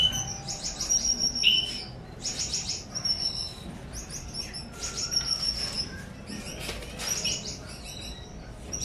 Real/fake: real